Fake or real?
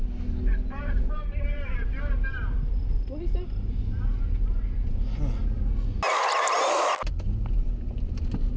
real